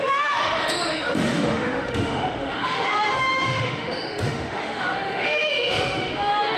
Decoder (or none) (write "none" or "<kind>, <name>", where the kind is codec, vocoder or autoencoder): autoencoder, DAC-VAE